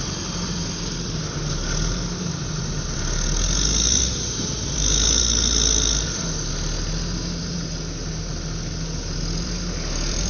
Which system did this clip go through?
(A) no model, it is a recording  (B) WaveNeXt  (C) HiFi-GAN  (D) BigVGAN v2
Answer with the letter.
D